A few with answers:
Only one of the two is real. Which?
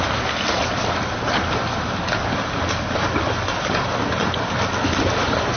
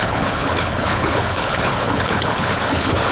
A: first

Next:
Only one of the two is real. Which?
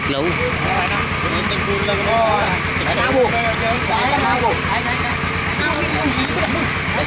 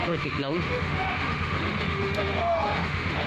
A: first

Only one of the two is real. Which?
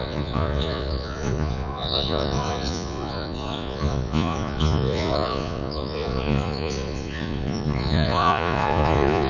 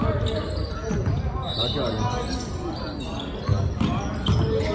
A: second